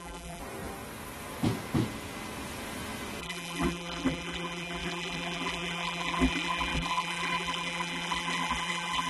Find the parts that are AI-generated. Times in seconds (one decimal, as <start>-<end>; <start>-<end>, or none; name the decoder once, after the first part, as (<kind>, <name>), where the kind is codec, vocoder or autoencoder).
0.0-0.4 (vocoder, BigVGAN v2); 3.2-9.1